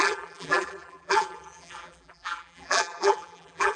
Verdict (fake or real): fake